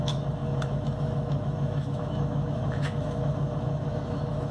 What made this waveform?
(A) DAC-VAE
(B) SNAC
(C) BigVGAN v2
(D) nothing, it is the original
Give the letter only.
A